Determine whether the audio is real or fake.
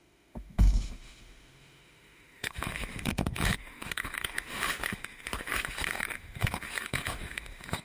fake